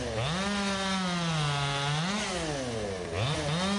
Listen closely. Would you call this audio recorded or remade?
recorded